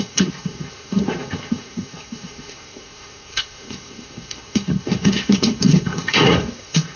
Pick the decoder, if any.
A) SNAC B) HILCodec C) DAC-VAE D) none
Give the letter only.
A